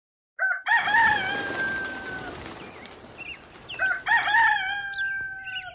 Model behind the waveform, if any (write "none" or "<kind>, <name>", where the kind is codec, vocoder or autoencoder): none